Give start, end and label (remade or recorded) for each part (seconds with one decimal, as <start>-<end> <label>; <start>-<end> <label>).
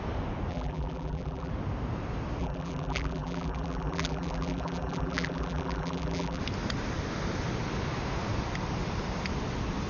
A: 0.0-0.5 recorded; 0.5-1.5 remade; 1.5-2.4 recorded; 2.4-6.4 remade; 6.4-9.9 recorded